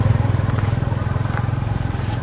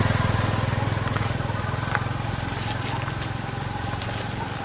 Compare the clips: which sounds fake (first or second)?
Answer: first